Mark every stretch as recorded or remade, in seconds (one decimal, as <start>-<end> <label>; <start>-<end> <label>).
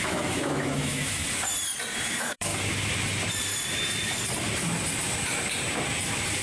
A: 0.0-1.2 remade; 1.2-2.1 recorded; 2.1-2.5 remade; 2.5-6.4 recorded